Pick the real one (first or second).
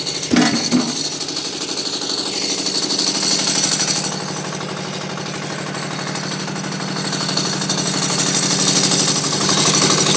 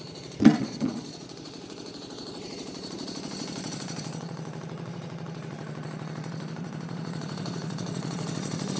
first